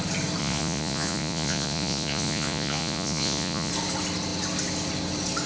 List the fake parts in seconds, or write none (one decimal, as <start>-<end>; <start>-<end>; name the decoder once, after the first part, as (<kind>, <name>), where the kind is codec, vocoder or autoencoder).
0.4-3.7 (vocoder, Vocos)